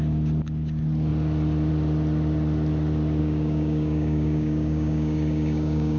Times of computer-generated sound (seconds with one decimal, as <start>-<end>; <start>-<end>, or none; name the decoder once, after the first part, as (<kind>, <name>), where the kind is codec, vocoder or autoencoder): 3.2-6.0 (codec, DAC)